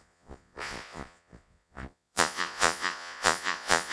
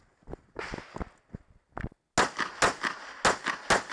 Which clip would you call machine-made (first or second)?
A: first